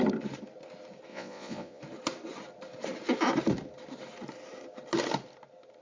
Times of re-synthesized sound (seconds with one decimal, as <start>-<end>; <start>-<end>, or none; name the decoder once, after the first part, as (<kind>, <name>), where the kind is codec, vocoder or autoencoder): 1.1-1.8 (vocoder, Vocos)